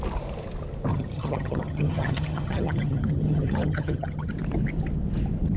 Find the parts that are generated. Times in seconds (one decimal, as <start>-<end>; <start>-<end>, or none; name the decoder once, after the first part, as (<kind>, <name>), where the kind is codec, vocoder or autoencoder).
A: 0.9-4.3 (vocoder, HiFi-GAN)